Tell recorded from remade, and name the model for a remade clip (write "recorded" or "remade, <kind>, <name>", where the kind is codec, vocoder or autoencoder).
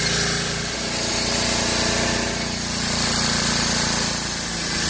recorded